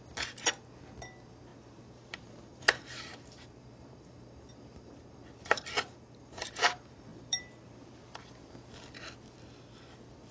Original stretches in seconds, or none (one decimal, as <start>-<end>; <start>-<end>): 0.0-1.5; 6.5-7.1; 7.8-10.3